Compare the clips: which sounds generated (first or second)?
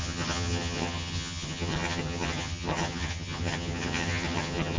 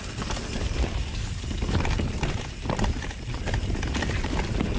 first